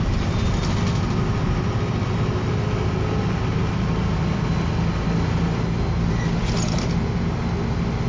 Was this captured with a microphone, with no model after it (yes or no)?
yes